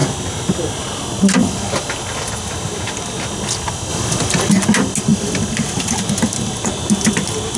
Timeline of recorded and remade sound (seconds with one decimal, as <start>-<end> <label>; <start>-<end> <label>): 0.0-7.6 recorded